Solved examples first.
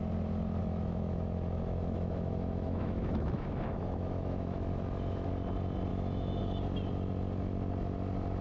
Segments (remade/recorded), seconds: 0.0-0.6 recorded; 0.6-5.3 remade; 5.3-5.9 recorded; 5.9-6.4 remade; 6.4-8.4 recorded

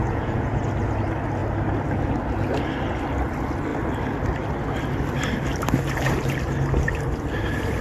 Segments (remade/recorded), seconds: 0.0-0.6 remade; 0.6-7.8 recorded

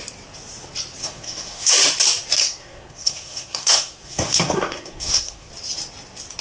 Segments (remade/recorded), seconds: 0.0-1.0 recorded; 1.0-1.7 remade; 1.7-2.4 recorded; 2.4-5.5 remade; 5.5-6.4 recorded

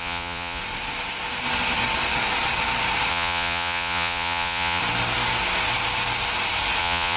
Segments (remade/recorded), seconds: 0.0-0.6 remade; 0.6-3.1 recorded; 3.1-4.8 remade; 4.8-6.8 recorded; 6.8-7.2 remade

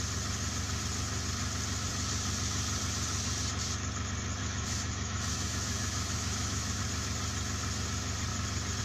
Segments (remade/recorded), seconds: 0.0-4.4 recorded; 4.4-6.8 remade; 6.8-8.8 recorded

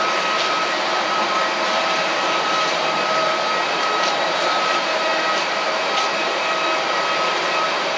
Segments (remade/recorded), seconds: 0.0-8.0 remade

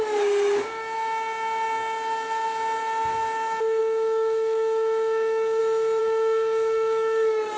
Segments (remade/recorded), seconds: 0.0-3.8 recorded; 3.8-5.6 remade; 5.6-6.0 recorded; 6.0-7.6 remade

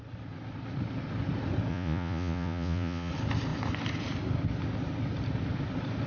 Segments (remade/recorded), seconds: 0.0-1.7 recorded; 1.7-3.1 remade; 3.1-6.1 recorded